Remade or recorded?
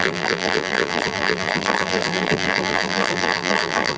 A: remade